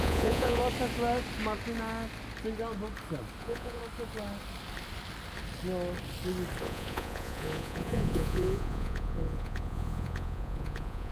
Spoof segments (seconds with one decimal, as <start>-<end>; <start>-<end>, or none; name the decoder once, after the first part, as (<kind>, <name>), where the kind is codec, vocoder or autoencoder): 0.0-0.6 (vocoder, Vocos); 3.4-3.8; 6.6-11.1